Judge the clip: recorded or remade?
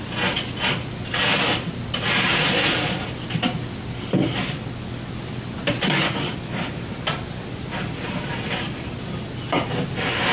recorded